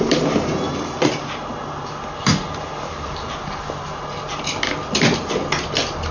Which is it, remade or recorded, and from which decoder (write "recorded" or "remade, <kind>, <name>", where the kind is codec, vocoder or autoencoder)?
recorded